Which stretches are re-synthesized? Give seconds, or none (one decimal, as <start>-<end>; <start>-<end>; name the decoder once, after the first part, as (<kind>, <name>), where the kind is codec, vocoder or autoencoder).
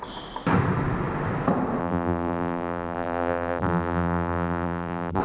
1.8-5.2 (vocoder, BigVGAN v2)